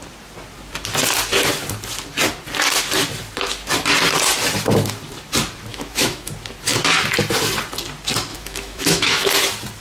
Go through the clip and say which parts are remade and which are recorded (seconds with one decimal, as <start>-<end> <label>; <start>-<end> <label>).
0.0-5.7 recorded; 5.7-6.3 remade; 6.3-8.3 recorded; 8.3-9.3 remade; 9.3-9.8 recorded